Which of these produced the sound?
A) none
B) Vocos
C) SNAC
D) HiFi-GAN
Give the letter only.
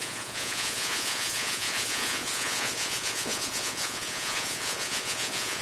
B